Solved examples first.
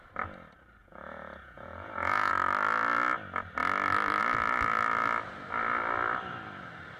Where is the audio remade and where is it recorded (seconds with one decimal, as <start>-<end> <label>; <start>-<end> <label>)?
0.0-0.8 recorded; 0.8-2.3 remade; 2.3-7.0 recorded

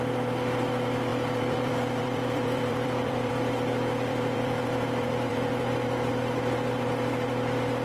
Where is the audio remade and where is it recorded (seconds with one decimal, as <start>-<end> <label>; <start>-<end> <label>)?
0.0-1.1 recorded; 1.1-3.3 remade; 3.3-4.1 recorded; 4.1-6.1 remade; 6.1-7.8 recorded

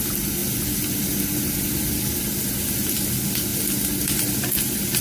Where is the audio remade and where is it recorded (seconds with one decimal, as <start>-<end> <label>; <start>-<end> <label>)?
0.0-5.0 recorded